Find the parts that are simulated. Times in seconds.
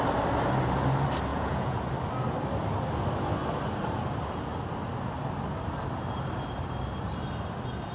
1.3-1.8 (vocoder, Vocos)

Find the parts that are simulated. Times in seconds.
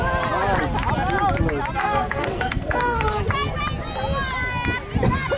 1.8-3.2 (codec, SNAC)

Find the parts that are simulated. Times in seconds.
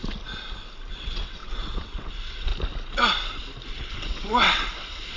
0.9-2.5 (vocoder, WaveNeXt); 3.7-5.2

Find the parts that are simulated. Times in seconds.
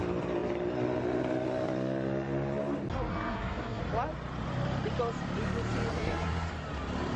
3.1-3.8 (codec, SNAC); 5.9-6.5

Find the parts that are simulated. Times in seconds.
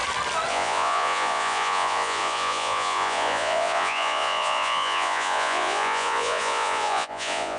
0.5-7.6 (vocoder, Vocos)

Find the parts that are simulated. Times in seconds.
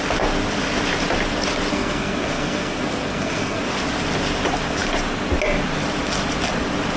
1.7-3.6 (codec, SNAC)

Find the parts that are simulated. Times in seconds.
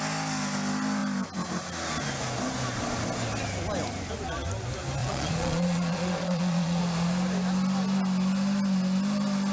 5.0-6.8 (vocoder, Vocos)